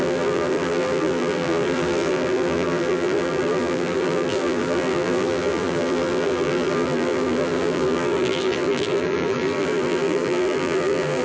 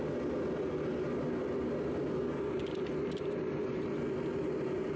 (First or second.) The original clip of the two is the second